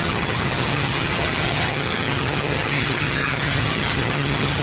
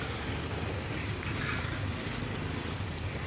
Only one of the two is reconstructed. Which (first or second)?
first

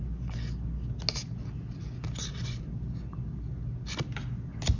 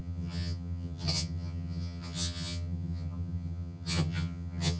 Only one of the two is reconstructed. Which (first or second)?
second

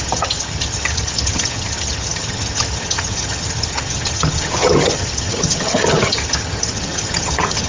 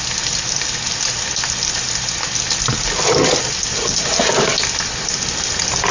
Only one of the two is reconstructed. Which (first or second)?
first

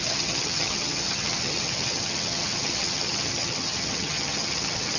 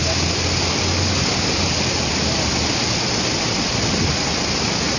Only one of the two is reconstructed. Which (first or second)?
first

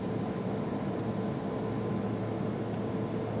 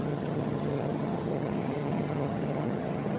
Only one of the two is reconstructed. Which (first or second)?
second